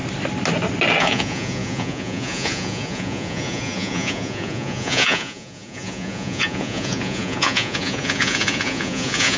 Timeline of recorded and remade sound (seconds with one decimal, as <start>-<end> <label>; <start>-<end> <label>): 0.0-1.0 recorded; 1.0-9.4 remade